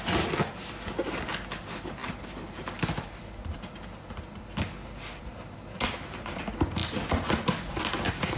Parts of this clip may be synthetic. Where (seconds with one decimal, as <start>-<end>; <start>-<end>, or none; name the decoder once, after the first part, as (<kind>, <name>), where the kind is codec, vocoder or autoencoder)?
none